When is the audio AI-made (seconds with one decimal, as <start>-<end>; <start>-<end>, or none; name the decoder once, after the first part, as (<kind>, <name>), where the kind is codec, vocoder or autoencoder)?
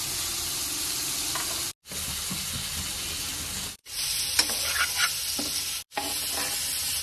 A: 3.8-4.8 (vocoder, BigVGAN v2)